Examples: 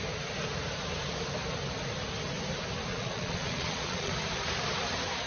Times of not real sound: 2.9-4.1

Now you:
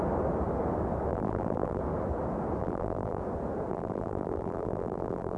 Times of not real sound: 1.1-1.8; 2.6-3.2; 3.7-5.4